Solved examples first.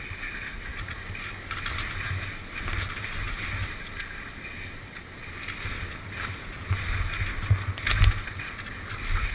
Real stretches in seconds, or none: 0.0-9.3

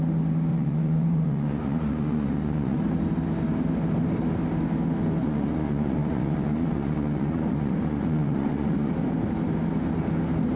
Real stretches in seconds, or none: 0.0-0.5; 2.8-5.2; 8.9-10.6

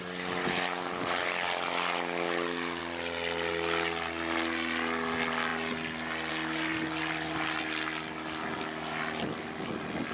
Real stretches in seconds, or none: 0.0-10.1

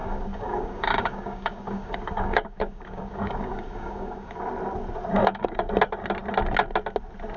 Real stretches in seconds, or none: 4.4-5.2; 5.7-7.4

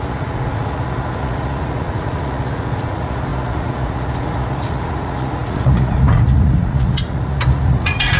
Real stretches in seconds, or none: none